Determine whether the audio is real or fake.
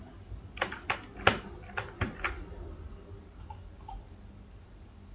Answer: real